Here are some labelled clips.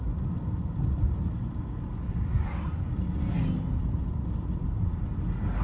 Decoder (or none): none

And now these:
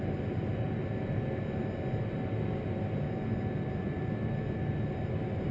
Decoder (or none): none